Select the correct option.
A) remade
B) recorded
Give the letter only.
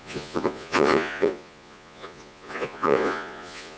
A